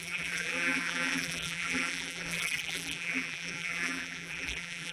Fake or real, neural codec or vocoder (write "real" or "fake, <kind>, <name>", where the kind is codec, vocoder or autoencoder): fake, vocoder, BigVGAN v2